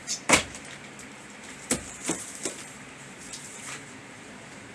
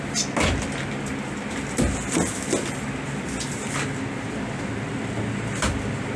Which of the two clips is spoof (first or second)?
first